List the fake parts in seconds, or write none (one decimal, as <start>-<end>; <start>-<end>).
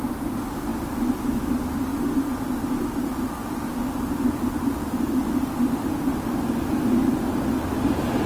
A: none